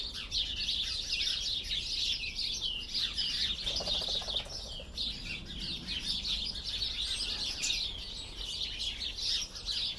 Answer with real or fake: real